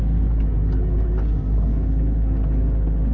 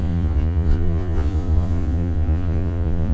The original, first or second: first